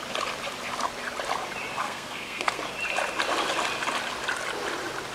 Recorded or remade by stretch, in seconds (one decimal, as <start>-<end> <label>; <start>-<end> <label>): 0.0-1.8 recorded; 1.8-2.6 remade; 2.6-5.1 recorded